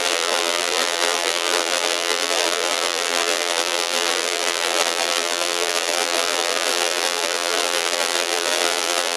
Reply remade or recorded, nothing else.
remade